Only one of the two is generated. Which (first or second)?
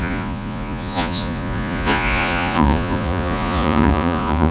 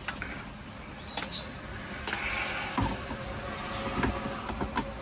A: first